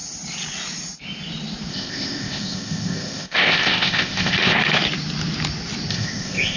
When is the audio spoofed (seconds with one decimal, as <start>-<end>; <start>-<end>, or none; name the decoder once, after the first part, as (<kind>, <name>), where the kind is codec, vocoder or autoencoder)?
1.7-4.6 (codec, ZipCodec); 5.9-6.6